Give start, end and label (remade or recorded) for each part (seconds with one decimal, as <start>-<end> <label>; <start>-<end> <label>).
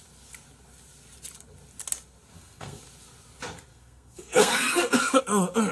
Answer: 0.0-2.3 recorded; 2.3-2.8 remade; 2.8-3.7 recorded; 3.7-5.2 remade; 5.2-5.7 recorded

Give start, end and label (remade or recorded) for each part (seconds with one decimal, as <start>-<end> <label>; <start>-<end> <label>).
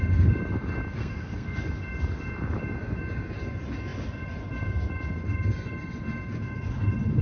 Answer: 0.0-1.0 recorded; 1.0-1.7 remade; 1.7-7.2 recorded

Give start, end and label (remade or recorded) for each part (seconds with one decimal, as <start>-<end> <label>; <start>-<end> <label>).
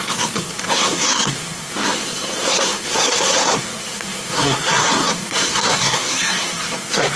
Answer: 0.0-7.2 remade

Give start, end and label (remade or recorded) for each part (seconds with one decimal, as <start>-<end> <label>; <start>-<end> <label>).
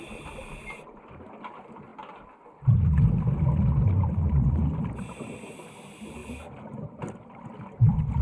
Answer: 0.0-8.2 recorded